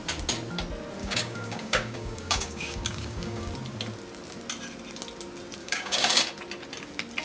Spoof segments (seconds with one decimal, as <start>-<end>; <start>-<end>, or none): 1.0-3.5; 5.6-6.2